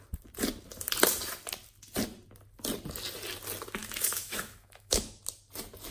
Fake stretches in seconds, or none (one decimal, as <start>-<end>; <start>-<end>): 3.8-5.2